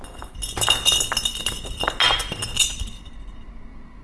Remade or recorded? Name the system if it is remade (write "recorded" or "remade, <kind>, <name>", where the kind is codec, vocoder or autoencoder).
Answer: recorded